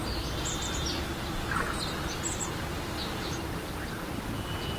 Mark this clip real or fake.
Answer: real